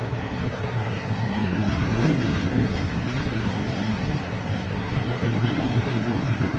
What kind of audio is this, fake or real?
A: fake